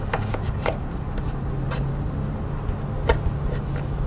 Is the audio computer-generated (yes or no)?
no